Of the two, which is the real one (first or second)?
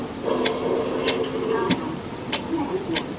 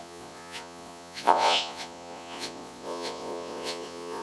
first